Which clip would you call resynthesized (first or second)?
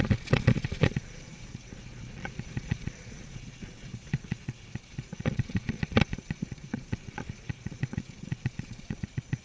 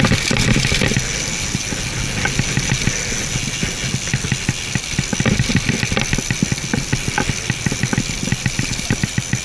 first